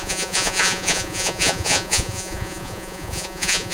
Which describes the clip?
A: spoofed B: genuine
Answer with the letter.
A